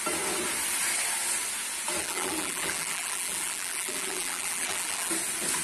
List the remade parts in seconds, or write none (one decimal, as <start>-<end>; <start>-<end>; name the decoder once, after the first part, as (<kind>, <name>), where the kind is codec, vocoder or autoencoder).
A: 2.0-5.1 (vocoder, BigVGAN v2)